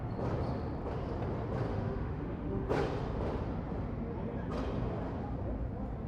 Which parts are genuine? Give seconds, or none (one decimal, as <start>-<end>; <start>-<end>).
0.0-1.7; 2.7-6.1